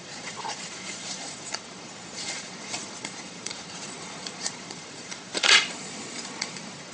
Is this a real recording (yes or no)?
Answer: no